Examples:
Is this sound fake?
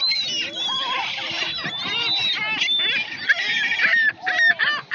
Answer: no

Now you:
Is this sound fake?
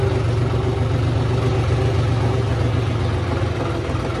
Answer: no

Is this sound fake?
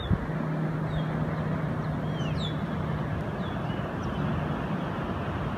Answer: no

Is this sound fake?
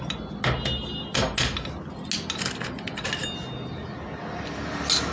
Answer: no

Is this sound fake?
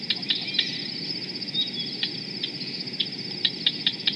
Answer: no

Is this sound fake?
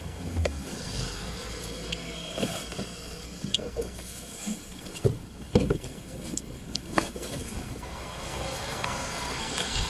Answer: yes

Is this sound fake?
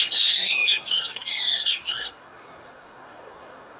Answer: yes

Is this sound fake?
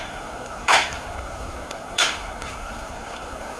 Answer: yes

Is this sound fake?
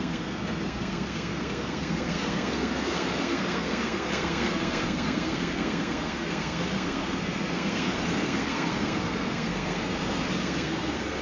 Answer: yes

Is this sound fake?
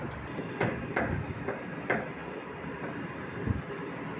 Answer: no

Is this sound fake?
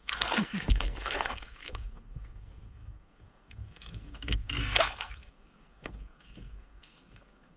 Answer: yes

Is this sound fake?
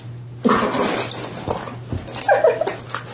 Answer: no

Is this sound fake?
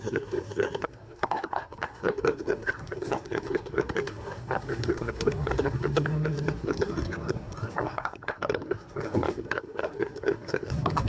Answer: yes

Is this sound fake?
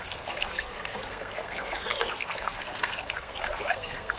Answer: yes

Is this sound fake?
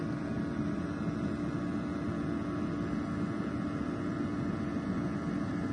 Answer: no